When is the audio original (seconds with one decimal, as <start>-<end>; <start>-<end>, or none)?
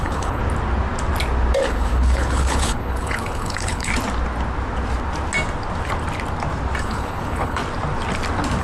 0.4-1.7; 3.9-6.8; 7.6-8.6